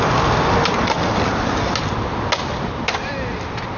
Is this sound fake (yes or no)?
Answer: no